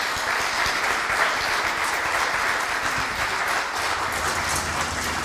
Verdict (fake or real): real